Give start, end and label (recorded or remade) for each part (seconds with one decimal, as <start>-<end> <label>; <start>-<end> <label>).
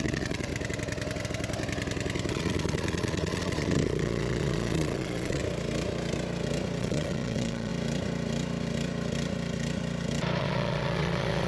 0.0-0.5 remade; 0.5-2.3 recorded; 2.3-5.4 remade; 5.4-6.8 recorded; 6.8-7.7 remade; 7.7-10.4 recorded; 10.4-11.5 remade